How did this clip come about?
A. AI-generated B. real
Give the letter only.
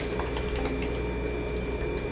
B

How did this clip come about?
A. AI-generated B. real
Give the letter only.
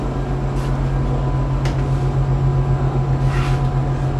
B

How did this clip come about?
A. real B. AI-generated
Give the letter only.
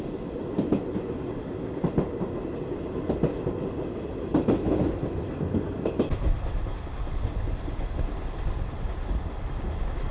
A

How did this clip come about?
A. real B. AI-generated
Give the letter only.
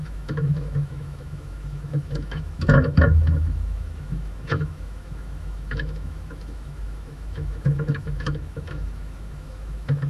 B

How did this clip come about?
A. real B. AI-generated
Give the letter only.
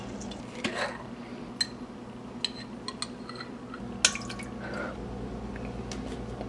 A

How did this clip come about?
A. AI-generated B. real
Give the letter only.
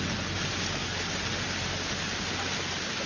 B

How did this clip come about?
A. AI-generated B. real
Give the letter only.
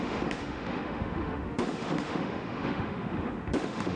A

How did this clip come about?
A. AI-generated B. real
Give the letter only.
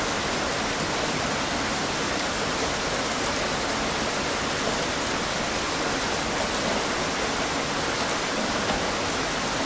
B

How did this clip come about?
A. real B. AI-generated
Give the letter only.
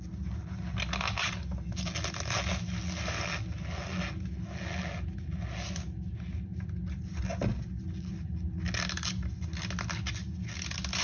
A